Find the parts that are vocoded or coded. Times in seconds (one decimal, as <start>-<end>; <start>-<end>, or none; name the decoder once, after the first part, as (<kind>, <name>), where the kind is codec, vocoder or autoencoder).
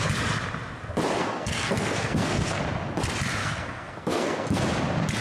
1.2-2.6 (codec, SNAC); 3.4-4.6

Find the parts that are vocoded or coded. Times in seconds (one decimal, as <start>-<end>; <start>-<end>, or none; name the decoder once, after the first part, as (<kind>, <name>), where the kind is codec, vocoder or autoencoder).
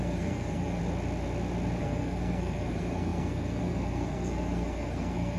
0.0-0.8 (codec, SNAC); 1.8-5.4